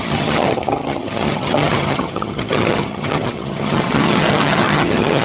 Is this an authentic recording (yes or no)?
no